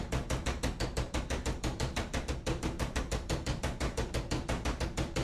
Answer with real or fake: fake